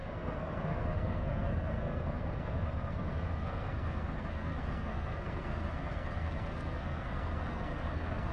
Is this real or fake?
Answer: fake